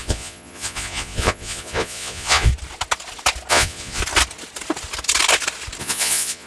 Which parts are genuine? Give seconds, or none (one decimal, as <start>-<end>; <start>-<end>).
2.5-3.5; 4.0-5.8